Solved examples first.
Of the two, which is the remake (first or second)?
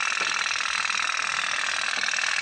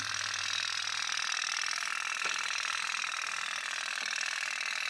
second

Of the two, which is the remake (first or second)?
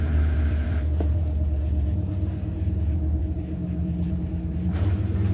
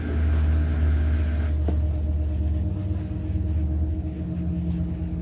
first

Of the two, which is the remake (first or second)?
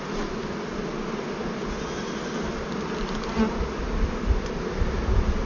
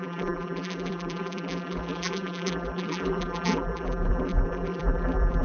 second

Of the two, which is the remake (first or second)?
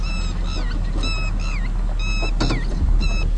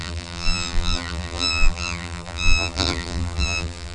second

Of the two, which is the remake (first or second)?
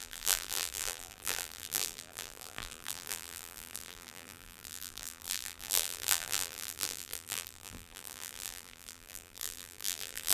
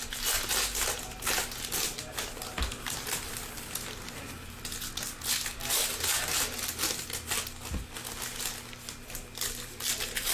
first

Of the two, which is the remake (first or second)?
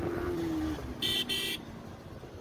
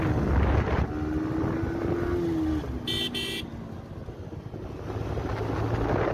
first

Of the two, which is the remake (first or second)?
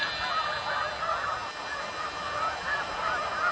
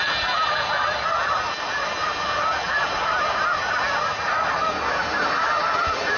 second